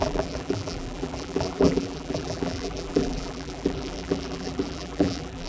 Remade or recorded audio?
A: remade